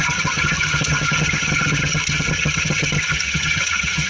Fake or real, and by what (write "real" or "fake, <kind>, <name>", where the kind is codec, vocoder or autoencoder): fake, vocoder, HiFi-GAN